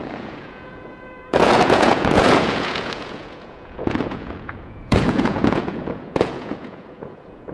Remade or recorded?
remade